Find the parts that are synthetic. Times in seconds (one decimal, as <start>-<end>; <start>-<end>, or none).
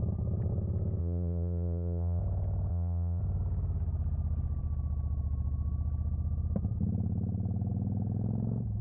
1.0-2.2; 2.7-3.2